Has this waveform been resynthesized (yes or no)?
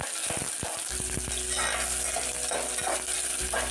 no